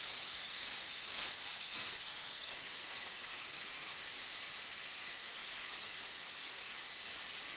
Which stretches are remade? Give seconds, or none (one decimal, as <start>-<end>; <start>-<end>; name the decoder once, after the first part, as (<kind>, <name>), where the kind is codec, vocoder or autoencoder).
0.0-4.1 (codec, SNAC); 4.6-6.7